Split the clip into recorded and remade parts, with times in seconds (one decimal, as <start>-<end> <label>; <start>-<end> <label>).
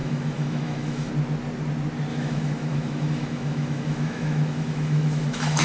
0.0-1.1 remade; 1.1-2.1 recorded; 2.1-5.6 remade